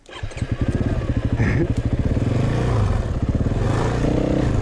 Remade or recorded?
recorded